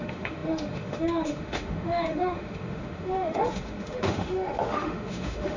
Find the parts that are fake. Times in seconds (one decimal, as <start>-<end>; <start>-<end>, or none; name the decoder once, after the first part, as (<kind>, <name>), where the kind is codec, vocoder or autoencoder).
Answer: 0.0-5.6 (autoencoder, DAC-VAE)